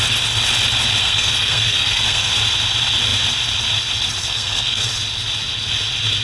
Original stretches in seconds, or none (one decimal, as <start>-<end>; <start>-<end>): 0.0-1.0; 2.3-4.2; 4.9-6.2